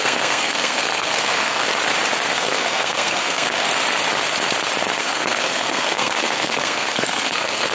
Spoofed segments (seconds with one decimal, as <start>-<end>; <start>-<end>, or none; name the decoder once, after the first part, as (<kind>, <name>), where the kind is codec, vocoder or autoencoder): 0.0-1.7 (codec, SNAC); 2.3-3.7; 5.0-7.7